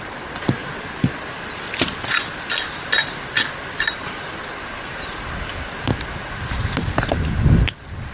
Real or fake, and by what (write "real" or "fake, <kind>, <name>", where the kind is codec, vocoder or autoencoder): real